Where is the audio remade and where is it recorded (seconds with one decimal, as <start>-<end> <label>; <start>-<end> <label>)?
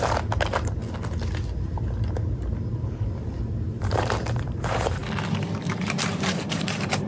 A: 0.0-0.8 remade; 0.8-3.8 recorded; 3.8-5.0 remade; 5.0-5.6 recorded; 5.6-7.1 remade